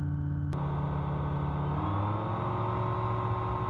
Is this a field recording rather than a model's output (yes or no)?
yes